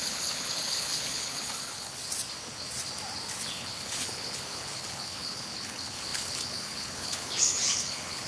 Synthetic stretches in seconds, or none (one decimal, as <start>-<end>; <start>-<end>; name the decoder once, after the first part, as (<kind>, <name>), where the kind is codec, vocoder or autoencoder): 0.0-2.0 (codec, HILCodec); 3.5-8.3